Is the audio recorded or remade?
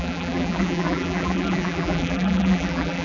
remade